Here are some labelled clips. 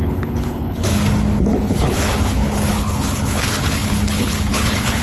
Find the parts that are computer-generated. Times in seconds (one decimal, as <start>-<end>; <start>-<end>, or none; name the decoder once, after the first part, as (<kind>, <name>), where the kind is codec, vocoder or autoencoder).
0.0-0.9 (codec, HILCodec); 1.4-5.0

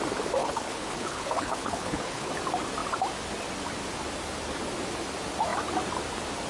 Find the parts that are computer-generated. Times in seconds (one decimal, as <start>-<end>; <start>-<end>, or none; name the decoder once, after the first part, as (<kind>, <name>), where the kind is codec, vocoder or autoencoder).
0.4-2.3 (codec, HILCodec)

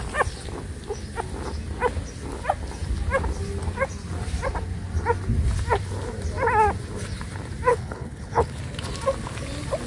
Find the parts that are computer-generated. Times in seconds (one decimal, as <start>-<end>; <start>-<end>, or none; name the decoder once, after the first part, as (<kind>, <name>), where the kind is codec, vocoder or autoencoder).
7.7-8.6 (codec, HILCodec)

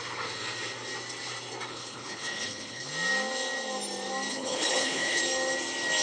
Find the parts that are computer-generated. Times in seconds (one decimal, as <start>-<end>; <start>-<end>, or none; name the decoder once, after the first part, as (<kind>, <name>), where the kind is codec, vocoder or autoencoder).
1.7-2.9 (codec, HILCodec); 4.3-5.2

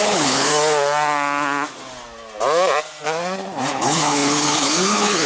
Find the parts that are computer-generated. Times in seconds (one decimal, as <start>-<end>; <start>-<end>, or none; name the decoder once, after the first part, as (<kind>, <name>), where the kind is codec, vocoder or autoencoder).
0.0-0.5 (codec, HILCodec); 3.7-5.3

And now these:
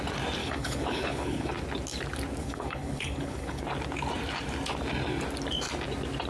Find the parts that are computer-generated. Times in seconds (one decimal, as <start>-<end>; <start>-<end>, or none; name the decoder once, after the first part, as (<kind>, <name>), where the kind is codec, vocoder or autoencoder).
0.4-1.5 (codec, HILCodec); 2.4-3.6